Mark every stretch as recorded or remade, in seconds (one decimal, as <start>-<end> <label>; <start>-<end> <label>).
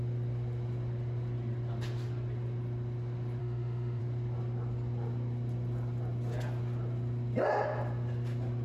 0.0-3.4 recorded; 3.4-4.0 remade; 4.0-8.6 recorded